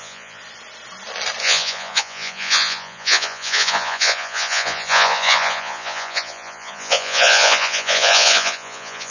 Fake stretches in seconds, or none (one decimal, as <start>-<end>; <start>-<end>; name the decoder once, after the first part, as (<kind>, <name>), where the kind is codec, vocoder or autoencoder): 0.0-0.4 (vocoder, Vocos); 1.4-9.1